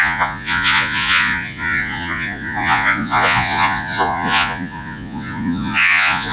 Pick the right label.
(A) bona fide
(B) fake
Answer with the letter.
B